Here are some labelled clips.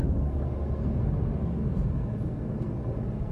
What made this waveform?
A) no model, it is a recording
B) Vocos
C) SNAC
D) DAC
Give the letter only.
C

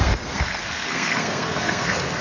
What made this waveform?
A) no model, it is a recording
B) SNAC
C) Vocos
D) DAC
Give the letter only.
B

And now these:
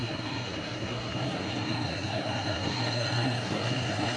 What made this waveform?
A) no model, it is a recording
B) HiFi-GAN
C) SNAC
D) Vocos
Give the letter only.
C